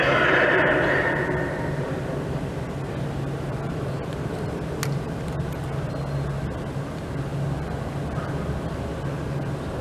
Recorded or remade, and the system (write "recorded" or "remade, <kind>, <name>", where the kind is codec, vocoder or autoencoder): recorded